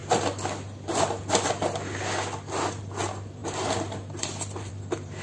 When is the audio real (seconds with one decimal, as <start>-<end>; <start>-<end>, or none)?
0.0-5.2